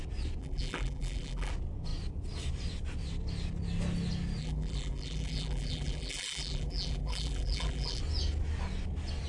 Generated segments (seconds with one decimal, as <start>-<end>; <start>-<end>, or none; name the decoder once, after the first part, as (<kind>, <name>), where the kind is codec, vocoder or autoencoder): 0.4-1.5 (vocoder, BigVGAN v2); 4.4-8.0